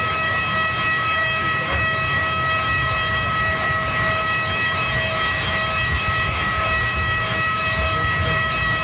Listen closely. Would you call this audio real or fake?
fake